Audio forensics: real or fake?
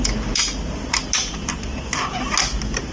real